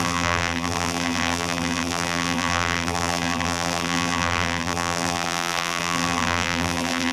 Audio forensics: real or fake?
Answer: fake